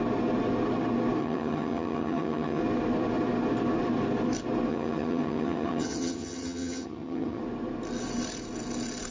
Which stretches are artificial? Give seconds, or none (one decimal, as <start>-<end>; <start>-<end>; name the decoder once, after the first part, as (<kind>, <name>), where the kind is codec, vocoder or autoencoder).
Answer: 1.2-2.6 (vocoder, HiFi-GAN); 4.7-7.4